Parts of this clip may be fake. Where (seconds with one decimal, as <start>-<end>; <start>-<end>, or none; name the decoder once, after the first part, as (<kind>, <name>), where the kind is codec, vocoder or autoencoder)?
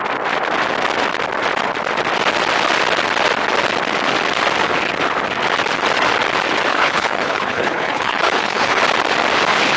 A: 6.7-8.8 (codec, HILCodec)